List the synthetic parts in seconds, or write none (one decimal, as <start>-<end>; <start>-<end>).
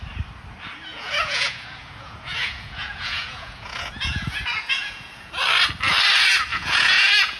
0.9-5.3; 6.5-7.4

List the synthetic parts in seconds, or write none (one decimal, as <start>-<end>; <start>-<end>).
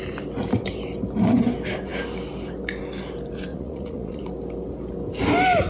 3.5-4.2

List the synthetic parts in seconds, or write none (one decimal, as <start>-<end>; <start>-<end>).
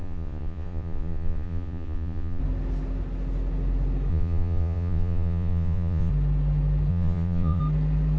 0.0-2.4; 4.1-6.1; 6.9-7.6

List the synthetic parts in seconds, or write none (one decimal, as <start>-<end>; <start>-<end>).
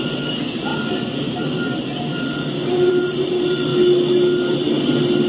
none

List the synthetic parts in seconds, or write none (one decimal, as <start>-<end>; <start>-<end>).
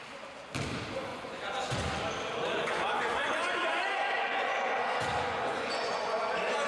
1.1-2.0; 2.4-6.2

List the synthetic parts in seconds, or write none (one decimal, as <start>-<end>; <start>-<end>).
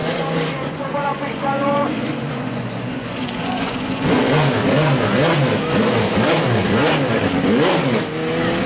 0.0-4.2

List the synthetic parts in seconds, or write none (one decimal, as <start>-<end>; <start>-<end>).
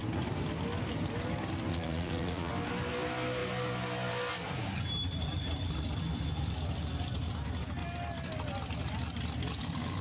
1.7-2.5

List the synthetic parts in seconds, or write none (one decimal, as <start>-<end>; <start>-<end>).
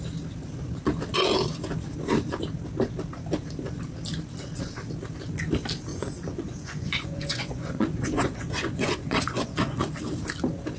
5.9-9.9